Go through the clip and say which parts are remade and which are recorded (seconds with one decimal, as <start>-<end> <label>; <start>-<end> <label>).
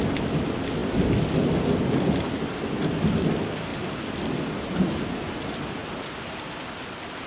0.0-3.7 recorded; 3.7-5.1 remade; 5.1-7.3 recorded